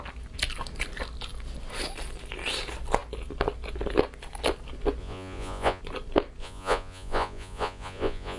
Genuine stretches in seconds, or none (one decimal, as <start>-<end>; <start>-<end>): 0.0-5.0; 5.8-6.4